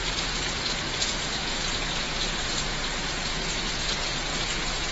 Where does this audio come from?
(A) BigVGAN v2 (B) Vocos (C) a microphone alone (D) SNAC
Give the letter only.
B